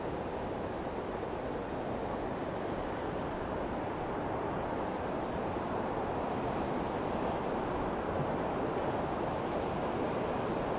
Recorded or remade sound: recorded